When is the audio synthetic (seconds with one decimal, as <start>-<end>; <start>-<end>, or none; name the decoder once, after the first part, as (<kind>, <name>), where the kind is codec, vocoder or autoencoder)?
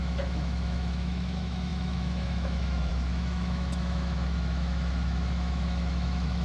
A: 0.0-6.4 (autoencoder, DAC-VAE)